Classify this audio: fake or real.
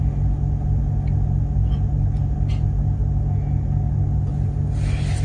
real